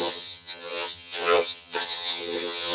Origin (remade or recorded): remade